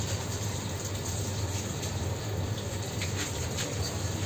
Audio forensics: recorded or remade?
remade